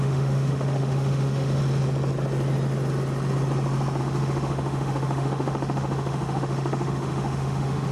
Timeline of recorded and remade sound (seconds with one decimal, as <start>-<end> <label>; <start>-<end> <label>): 0.0-1.6 remade; 1.6-4.0 recorded; 4.0-7.9 remade